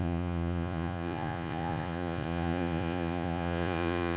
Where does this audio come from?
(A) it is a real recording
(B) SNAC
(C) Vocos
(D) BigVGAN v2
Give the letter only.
C